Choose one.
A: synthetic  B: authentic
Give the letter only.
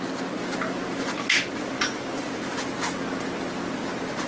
B